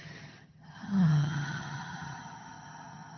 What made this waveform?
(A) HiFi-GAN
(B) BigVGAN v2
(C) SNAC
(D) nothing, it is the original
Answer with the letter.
A